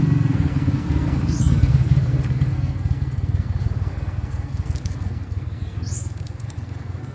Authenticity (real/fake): fake